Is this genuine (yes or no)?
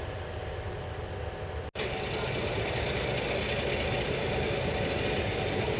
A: yes